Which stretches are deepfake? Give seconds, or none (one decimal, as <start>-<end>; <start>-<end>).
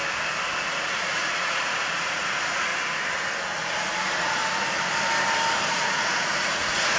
0.6-2.7; 3.6-4.4; 5.7-7.0